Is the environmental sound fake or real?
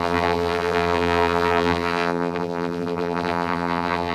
fake